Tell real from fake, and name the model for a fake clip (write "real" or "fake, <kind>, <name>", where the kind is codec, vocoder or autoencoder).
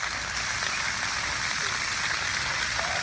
real